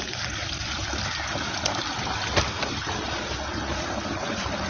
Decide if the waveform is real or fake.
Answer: real